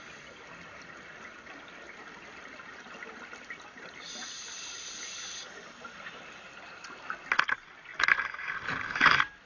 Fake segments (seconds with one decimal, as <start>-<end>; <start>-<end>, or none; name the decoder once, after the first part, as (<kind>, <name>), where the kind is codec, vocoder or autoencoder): none